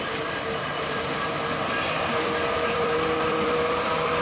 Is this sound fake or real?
fake